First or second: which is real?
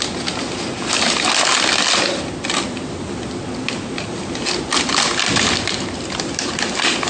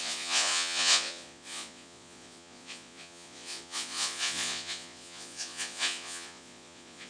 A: first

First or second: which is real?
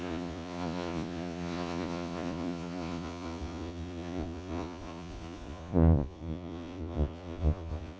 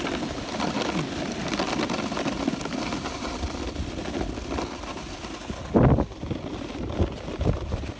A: second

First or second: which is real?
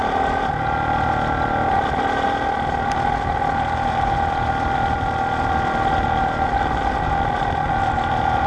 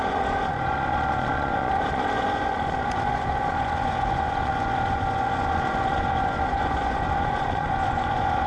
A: first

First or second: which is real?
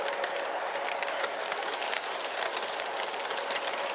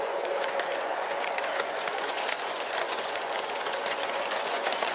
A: first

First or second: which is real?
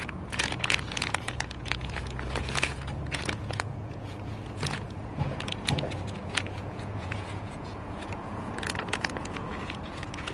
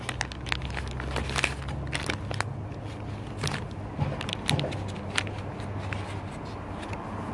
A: second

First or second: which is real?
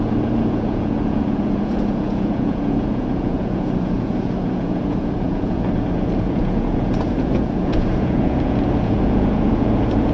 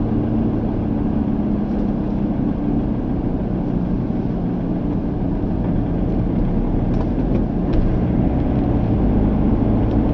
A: second